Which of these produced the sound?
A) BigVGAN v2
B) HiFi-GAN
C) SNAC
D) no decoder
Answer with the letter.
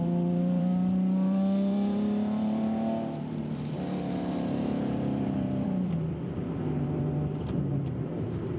A